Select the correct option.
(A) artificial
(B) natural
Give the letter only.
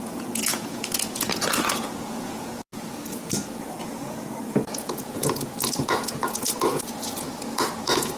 A